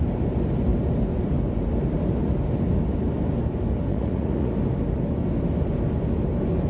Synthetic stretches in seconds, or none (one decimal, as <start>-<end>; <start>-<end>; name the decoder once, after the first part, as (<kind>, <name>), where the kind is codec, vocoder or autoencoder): 3.9-4.5 (vocoder, Vocos)